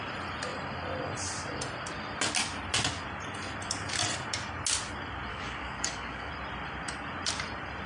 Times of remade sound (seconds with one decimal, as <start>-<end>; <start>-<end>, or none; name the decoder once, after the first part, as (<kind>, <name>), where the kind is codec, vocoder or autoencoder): 5.3-6.3 (codec, DAC)